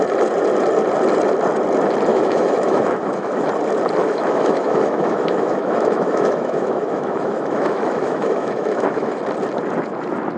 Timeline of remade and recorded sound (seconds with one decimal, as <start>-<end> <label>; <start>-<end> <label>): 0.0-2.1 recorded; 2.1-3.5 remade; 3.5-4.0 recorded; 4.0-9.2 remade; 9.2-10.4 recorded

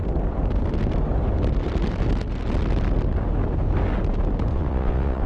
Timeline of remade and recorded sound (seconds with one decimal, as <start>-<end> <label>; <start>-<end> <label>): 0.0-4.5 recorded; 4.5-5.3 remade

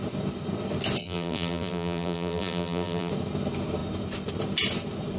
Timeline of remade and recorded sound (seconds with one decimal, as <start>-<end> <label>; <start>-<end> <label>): 0.0-1.0 recorded; 1.0-3.1 remade; 3.1-5.2 recorded